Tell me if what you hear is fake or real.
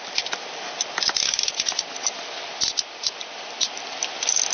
real